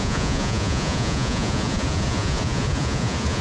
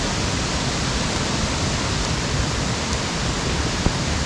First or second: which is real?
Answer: second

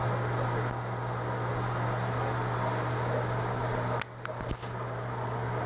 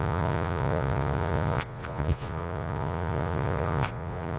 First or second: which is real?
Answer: first